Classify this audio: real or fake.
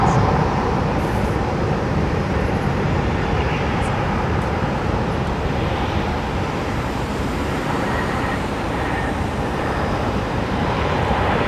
fake